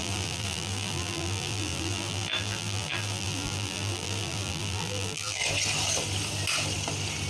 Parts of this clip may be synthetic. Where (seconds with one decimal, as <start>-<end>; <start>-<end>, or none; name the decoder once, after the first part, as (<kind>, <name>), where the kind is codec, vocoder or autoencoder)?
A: 0.0-5.4 (vocoder, BigVGAN v2)